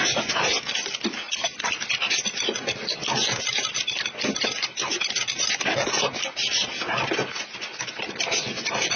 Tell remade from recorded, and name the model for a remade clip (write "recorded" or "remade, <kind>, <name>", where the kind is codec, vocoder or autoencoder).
recorded